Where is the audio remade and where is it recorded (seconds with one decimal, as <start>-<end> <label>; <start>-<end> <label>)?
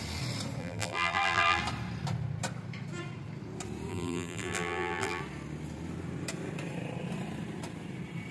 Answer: 0.0-0.6 recorded; 0.6-1.6 remade; 1.6-3.9 recorded; 3.9-5.2 remade; 5.2-8.3 recorded